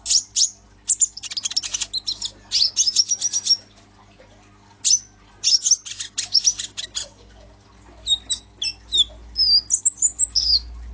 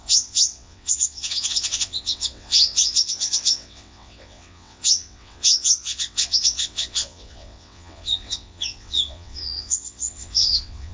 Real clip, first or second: first